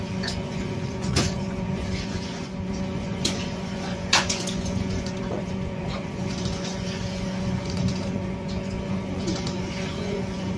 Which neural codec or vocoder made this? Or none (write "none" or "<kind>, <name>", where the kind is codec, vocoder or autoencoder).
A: vocoder, Vocos